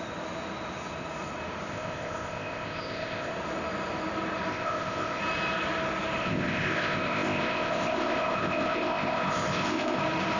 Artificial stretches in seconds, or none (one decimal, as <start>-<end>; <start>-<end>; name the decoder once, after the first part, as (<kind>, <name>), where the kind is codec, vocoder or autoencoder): 1.7-3.3 (codec, ZipCodec); 4.5-5.2; 6.2-10.0